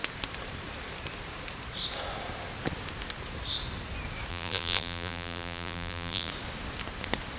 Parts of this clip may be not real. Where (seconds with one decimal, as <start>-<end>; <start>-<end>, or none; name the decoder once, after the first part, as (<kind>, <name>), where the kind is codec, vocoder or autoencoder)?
4.3-6.3 (vocoder, BigVGAN v2)